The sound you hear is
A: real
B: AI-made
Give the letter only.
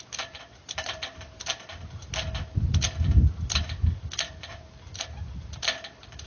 A